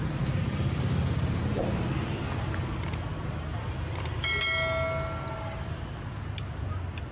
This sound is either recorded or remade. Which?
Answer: recorded